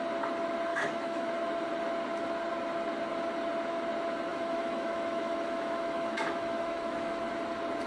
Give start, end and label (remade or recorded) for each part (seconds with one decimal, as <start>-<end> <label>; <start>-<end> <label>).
0.0-0.7 recorded; 0.7-1.3 remade; 1.3-4.3 recorded; 4.3-7.3 remade; 7.3-7.9 recorded